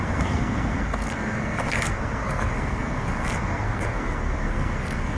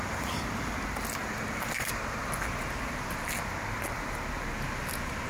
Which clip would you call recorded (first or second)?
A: second